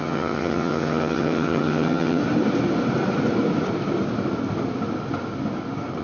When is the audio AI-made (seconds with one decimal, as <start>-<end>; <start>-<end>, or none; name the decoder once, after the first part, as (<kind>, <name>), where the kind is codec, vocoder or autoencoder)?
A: 0.0-2.2 (vocoder, HiFi-GAN)